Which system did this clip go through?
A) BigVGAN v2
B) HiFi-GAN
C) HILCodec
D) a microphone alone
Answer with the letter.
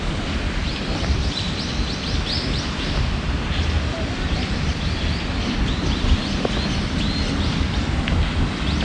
D